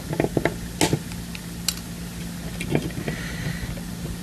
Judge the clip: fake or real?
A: real